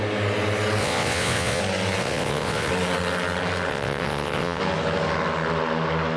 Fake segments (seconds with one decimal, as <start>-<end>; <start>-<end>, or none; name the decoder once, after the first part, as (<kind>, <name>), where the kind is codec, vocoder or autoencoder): 0.8-1.6 (vocoder, WaveNeXt); 2.0-2.7; 3.7-4.6